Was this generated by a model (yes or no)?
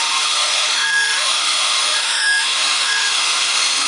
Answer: yes